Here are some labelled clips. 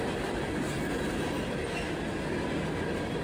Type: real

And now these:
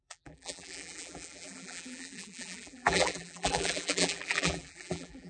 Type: fake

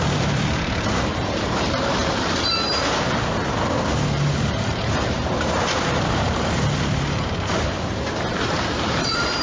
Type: fake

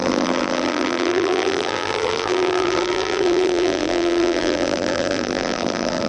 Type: fake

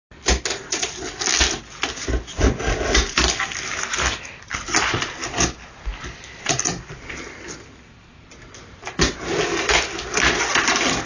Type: real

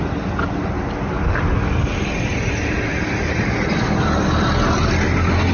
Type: real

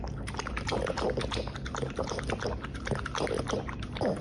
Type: real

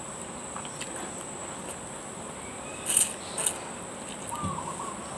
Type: real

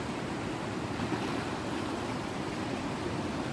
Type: real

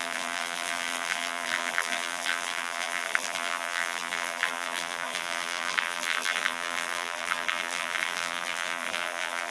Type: fake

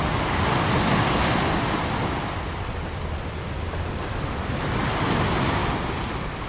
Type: real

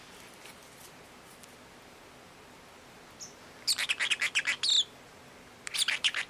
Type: real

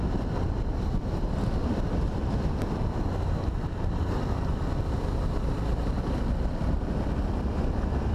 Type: fake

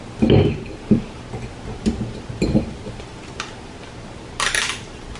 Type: real